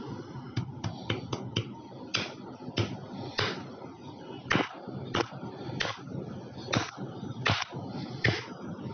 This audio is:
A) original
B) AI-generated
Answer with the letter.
A